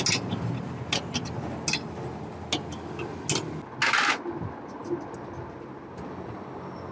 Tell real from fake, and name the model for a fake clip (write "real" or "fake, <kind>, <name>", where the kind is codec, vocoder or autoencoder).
real